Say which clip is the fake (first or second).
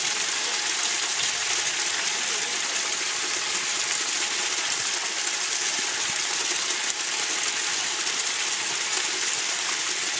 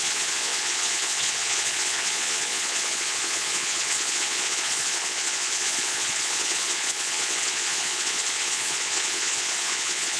second